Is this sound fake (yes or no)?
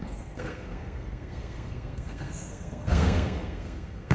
yes